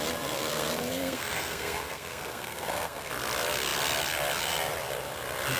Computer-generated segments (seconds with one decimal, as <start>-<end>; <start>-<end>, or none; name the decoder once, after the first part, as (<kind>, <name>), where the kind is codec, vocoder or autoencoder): 0.5-3.1 (codec, SNAC)

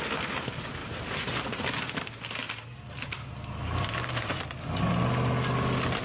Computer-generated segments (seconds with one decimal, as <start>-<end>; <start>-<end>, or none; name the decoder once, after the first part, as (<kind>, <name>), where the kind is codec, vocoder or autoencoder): none

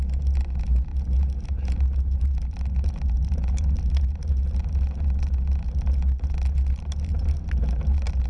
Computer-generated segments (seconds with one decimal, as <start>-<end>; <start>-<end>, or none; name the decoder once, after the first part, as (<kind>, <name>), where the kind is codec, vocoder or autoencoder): none

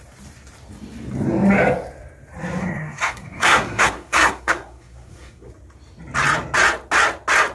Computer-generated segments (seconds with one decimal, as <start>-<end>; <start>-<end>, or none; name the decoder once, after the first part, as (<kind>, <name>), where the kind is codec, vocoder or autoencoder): 2.6-5.5 (codec, SNAC)